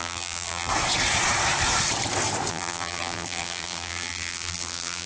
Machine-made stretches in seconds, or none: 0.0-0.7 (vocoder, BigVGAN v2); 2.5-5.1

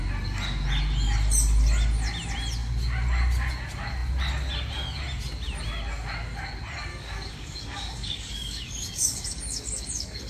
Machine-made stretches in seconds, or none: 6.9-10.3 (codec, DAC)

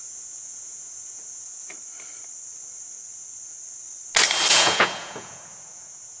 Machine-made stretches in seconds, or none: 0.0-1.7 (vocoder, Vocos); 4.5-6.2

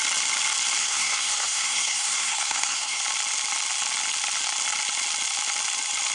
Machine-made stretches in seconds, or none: 0.8-3.0 (codec, SNAC)

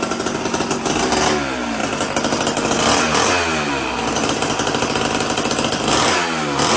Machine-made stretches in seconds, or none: none